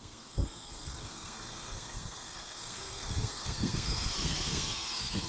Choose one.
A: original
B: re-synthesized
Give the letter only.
B